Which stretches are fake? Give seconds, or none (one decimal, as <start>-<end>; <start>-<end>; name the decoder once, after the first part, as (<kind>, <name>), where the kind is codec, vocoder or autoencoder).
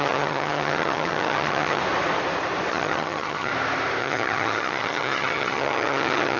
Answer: 0.0-1.8 (vocoder, HiFi-GAN); 2.7-3.5; 4.0-6.4